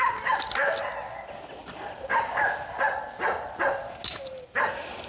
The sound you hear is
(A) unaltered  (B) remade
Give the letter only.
A